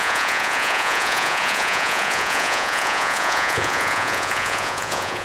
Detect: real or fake fake